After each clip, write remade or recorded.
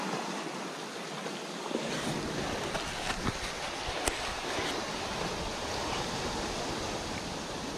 recorded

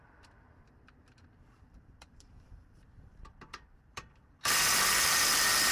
remade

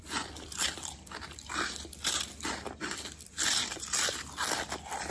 remade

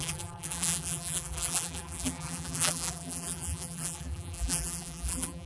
remade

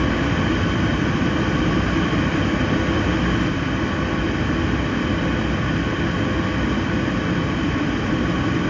recorded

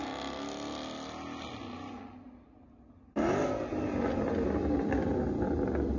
recorded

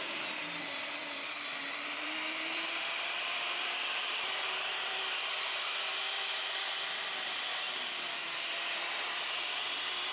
remade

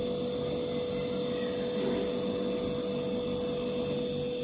recorded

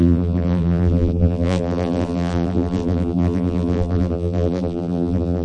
remade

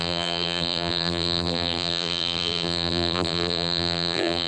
remade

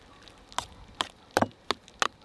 recorded